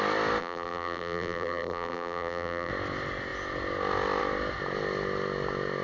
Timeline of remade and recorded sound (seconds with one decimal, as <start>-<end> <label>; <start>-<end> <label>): 0.0-0.4 recorded; 0.4-2.7 remade; 2.7-5.8 recorded